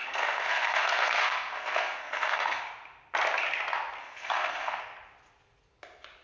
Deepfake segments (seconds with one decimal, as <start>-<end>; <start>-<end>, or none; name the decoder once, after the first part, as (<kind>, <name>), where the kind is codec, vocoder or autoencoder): 0.0-2.6 (codec, SNAC); 4.0-4.8